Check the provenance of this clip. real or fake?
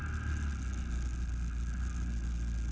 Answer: real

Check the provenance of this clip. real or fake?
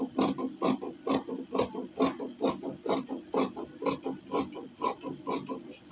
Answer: real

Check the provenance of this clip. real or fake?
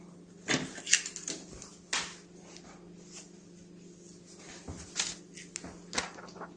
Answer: real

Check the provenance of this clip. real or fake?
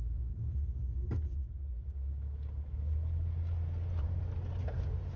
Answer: real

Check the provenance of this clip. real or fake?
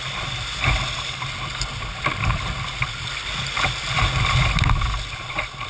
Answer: real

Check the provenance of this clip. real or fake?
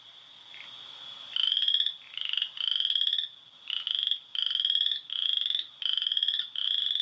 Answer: real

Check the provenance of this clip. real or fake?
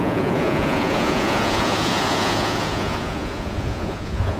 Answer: fake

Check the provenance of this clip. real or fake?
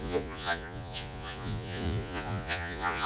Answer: fake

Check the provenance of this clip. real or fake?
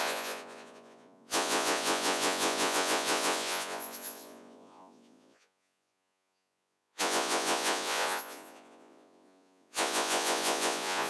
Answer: fake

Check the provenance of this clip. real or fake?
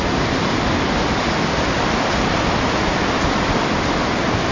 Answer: real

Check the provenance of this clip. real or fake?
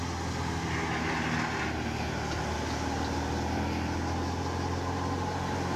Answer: real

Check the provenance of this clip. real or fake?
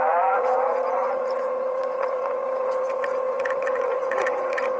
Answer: fake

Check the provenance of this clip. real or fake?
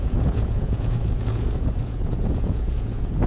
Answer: fake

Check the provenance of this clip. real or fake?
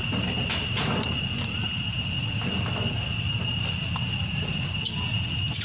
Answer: real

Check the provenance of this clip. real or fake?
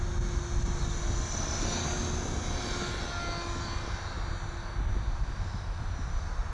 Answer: real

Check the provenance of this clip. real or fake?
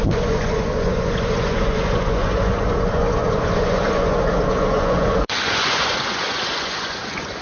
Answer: fake